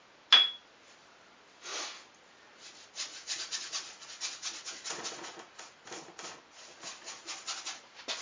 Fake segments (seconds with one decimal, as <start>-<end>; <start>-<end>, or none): 3.1-6.4